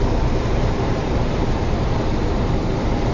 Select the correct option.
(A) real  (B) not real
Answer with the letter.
B